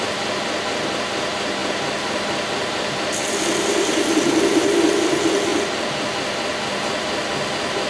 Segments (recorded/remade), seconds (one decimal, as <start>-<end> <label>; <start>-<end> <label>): 0.0-7.9 recorded